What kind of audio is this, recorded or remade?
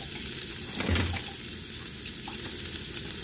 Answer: recorded